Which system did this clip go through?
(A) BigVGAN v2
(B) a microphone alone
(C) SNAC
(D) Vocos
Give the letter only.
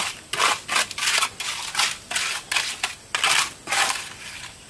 B